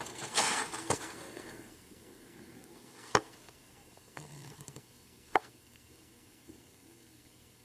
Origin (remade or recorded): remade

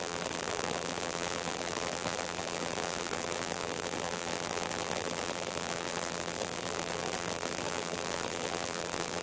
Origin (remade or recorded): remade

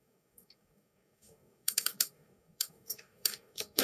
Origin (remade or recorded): remade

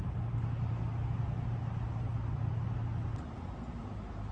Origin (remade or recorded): recorded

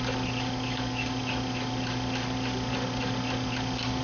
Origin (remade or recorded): recorded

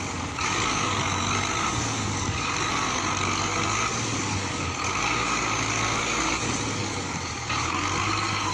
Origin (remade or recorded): remade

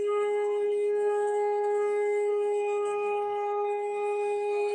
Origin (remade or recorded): remade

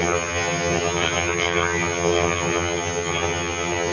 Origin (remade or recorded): remade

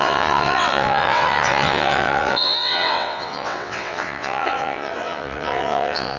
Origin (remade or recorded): remade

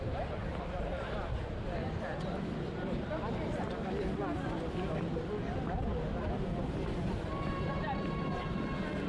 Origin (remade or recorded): recorded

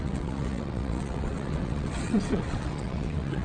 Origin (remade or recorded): remade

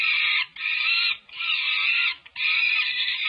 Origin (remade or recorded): recorded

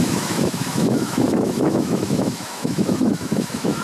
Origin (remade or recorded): remade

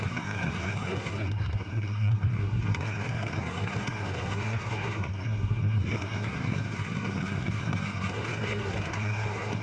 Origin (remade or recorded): remade